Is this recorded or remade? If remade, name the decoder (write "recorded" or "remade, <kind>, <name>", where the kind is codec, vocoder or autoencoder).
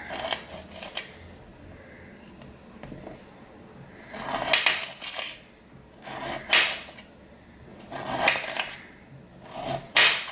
recorded